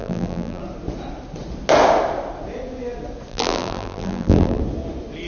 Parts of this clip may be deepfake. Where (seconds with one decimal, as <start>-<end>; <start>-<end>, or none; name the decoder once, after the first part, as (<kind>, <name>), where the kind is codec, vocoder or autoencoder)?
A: 0.0-0.6 (vocoder, BigVGAN v2); 3.3-4.6